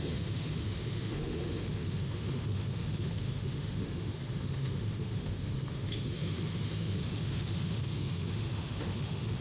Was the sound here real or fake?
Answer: fake